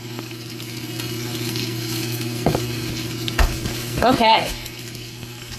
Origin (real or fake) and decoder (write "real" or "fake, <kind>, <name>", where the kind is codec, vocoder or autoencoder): fake, codec, SNAC